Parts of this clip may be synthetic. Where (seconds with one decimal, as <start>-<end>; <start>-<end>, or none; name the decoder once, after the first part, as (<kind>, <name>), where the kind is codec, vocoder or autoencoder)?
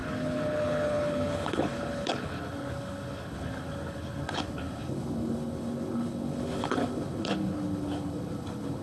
0.0-8.8 (codec, HILCodec)